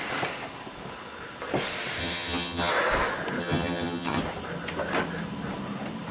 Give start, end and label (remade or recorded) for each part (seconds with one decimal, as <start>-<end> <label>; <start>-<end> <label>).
0.0-2.0 recorded; 2.0-2.7 remade; 2.7-3.4 recorded; 3.4-4.2 remade; 4.2-6.1 recorded